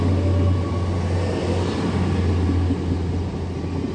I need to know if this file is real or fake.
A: real